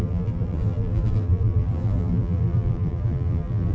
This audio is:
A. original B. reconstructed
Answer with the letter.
B